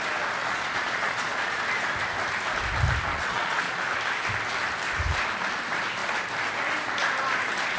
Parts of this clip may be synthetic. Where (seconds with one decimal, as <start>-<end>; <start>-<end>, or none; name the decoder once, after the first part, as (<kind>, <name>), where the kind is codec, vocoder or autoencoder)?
0.4-1.6 (vocoder, Vocos); 3.1-3.9